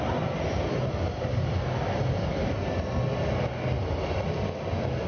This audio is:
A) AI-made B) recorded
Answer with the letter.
B